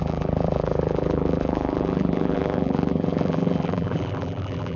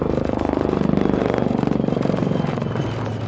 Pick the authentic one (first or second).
second